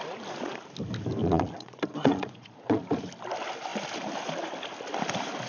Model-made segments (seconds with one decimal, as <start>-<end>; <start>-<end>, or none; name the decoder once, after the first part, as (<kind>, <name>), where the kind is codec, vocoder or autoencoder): 1.2-2.8 (vocoder, Vocos)